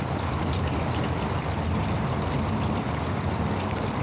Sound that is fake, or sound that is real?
real